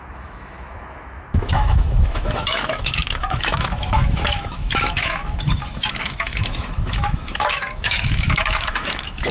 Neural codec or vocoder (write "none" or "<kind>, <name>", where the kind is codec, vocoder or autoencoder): autoencoder, DAC-VAE